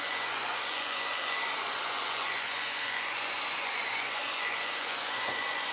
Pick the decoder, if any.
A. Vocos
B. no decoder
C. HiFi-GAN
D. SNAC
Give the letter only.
A